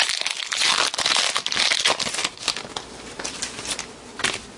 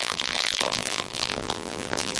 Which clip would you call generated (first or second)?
second